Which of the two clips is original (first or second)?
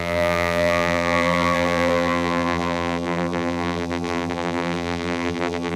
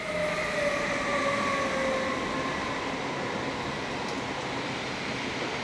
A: second